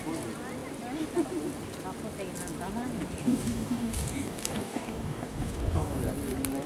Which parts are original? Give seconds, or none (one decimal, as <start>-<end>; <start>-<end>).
0.0-3.2; 6.0-6.7